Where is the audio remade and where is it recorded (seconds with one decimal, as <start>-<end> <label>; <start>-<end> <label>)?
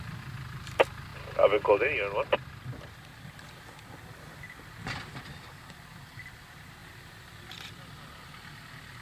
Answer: 0.0-1.1 remade; 1.1-4.2 recorded; 4.2-9.0 remade